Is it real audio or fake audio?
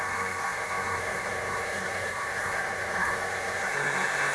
fake